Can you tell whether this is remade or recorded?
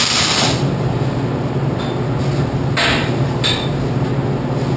recorded